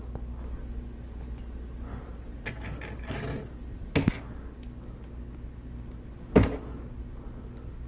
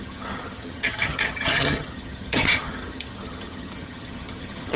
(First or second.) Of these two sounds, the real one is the first